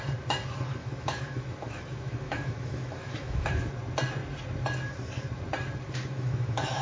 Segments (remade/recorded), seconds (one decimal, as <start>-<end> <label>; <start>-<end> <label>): 0.0-0.8 recorded; 0.8-3.7 remade; 3.7-6.0 recorded; 6.0-6.8 remade